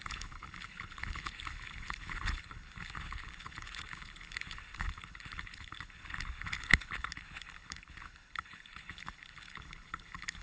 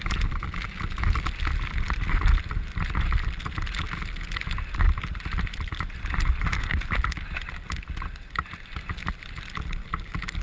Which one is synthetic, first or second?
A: first